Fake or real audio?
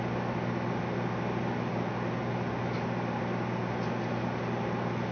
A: real